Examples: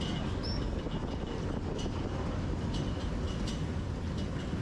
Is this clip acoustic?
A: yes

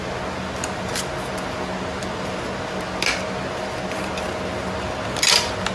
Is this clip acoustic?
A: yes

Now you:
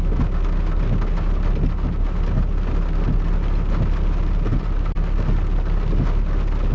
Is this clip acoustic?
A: yes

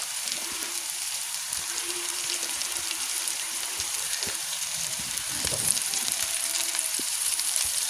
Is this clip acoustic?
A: no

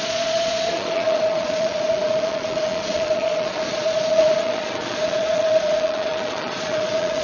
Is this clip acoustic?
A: no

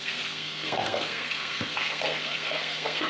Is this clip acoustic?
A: no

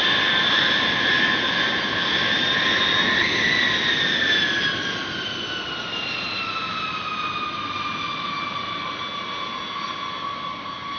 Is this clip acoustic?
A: yes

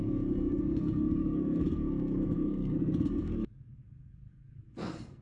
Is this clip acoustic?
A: no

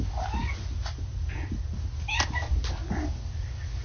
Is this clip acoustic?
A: yes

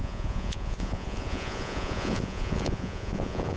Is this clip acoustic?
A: no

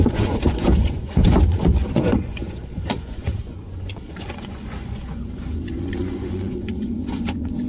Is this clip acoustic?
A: no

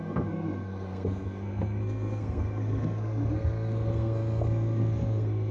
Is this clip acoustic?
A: no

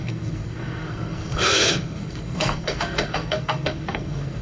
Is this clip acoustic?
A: no